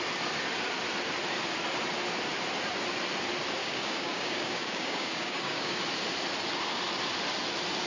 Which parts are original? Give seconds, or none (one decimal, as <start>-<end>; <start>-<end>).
0.0-3.6; 5.8-7.9